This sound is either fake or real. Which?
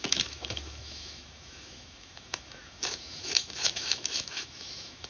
fake